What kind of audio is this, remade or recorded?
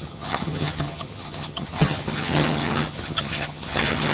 remade